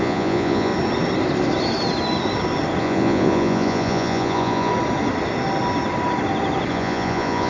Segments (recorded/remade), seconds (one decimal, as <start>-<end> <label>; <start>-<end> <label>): 0.0-0.7 remade; 0.7-2.8 recorded; 2.8-4.7 remade; 4.7-6.7 recorded; 6.7-7.5 remade